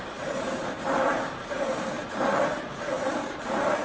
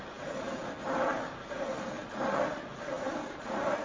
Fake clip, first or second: first